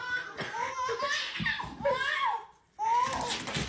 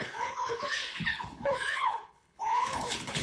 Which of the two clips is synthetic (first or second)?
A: second